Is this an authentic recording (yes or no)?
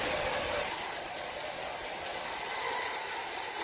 yes